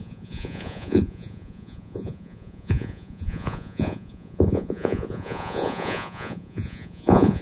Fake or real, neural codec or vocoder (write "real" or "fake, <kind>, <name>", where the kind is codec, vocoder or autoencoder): fake, vocoder, Vocos